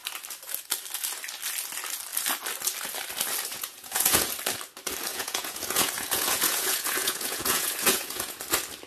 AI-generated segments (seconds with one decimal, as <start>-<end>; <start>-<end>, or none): 3.5-4.3; 5.1-8.4